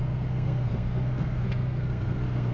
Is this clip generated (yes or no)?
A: yes